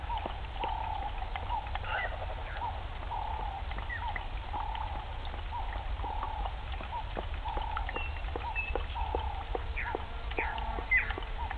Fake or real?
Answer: real